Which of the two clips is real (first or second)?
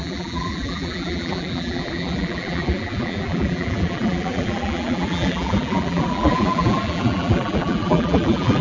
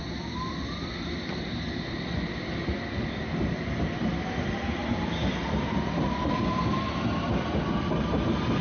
second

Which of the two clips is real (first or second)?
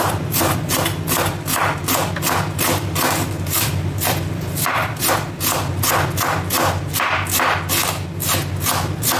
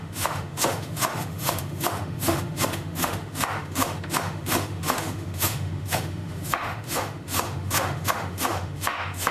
first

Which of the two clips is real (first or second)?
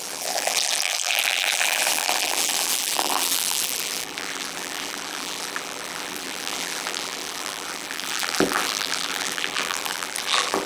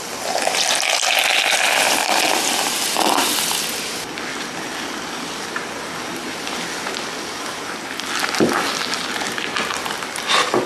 second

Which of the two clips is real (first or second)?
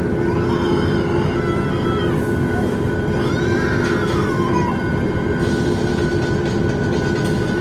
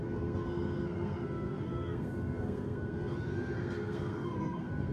first